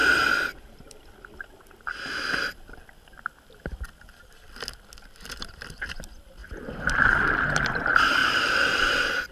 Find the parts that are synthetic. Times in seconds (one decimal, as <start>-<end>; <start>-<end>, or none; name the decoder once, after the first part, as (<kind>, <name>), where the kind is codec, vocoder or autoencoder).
8.2-9.3 (vocoder, BigVGAN v2)